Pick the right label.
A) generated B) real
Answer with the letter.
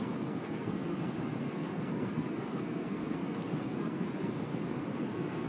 A